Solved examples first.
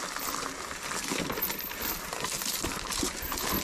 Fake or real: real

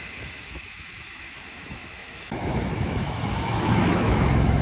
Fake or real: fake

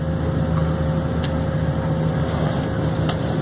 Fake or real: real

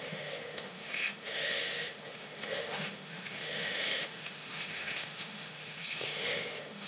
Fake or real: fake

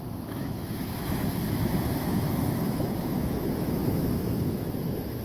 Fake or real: fake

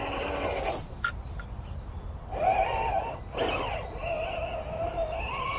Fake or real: real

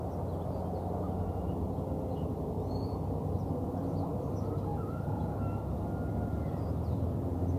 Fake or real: real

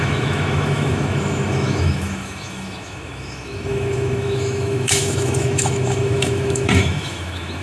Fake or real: fake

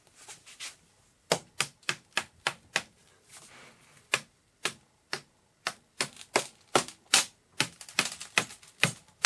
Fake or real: real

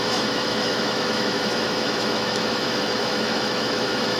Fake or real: fake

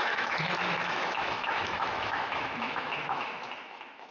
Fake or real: fake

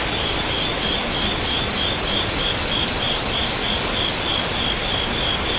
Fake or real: real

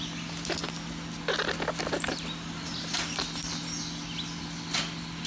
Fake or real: real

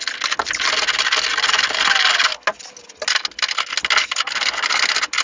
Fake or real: real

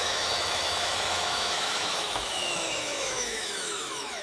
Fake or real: fake